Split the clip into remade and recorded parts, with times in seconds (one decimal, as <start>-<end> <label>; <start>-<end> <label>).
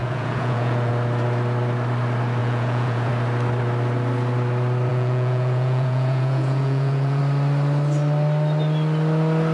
0.0-0.9 remade; 0.9-2.4 recorded; 2.4-3.1 remade; 3.1-4.9 recorded; 4.9-7.2 remade; 7.2-9.5 recorded